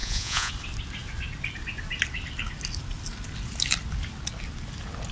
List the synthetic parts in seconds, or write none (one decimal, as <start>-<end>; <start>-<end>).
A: 0.0-0.5